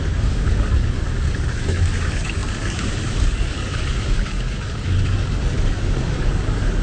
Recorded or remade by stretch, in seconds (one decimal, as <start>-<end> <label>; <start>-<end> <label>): 0.0-6.8 remade